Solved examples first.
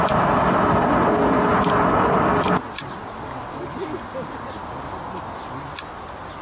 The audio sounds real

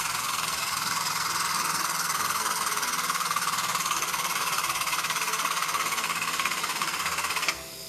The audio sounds fake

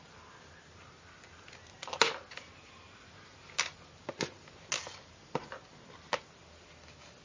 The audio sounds real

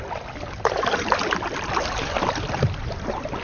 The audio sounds fake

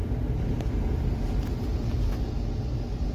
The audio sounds real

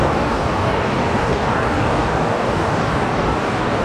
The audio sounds fake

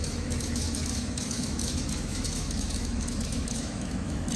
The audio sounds fake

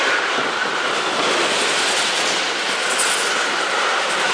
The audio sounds real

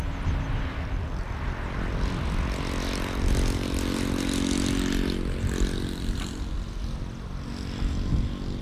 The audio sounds real